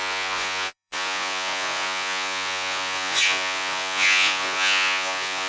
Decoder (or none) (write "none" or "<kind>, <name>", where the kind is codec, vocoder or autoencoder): vocoder, Vocos